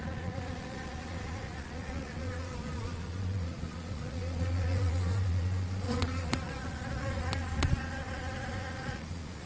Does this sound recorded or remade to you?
remade